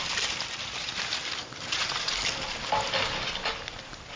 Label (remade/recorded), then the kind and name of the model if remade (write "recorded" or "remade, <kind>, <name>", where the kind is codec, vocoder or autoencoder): recorded